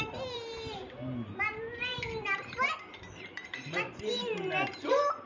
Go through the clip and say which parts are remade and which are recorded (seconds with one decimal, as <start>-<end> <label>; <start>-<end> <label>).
0.0-0.8 remade; 0.8-1.4 recorded; 1.4-5.3 remade